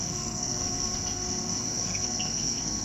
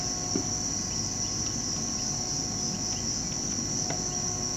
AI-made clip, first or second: first